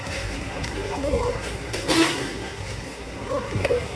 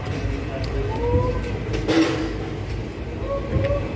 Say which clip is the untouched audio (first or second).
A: second